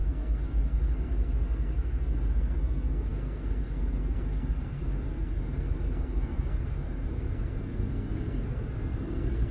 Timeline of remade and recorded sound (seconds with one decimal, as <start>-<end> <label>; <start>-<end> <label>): 0.0-9.5 remade